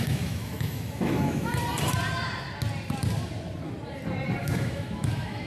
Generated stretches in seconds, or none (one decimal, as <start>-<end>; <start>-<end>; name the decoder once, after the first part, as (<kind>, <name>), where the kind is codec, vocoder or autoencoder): 0.0-1.5 (autoencoder, DAC-VAE); 4.4-5.5